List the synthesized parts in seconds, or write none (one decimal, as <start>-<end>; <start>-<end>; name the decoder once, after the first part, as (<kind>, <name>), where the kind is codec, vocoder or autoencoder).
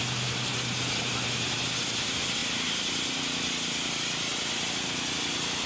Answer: none